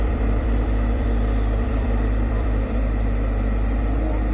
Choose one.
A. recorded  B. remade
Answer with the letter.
B